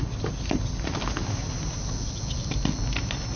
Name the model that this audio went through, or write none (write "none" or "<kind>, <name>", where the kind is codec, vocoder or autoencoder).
none